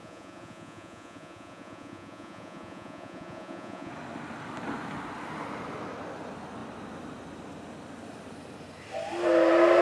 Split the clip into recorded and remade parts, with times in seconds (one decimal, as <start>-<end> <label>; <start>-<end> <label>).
0.0-3.9 remade; 3.9-9.8 recorded